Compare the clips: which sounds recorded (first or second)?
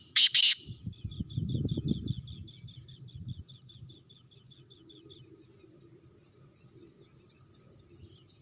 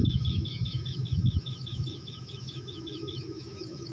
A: first